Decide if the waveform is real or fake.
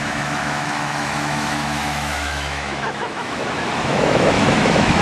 fake